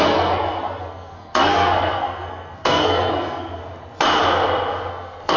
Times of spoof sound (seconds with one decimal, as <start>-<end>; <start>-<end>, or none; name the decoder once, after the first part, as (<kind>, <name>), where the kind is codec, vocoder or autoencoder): 0.0-3.6 (codec, SNAC); 4.9-5.4